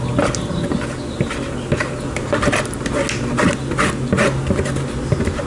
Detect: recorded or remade recorded